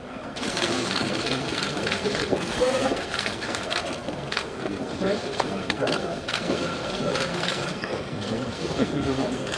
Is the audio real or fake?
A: fake